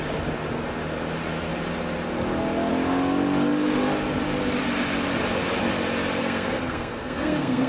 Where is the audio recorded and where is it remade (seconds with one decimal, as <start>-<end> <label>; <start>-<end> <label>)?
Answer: 0.0-6.2 recorded; 6.2-7.7 remade